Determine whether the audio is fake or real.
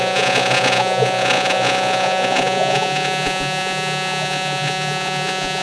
fake